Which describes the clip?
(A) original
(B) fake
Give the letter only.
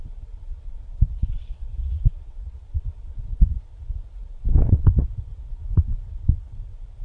B